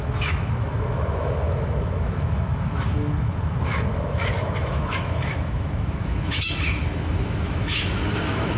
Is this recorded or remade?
remade